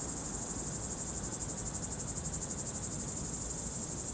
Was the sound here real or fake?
real